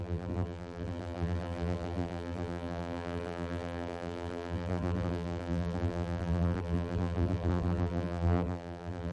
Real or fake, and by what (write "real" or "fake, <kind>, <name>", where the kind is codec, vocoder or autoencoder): fake, vocoder, BigVGAN v2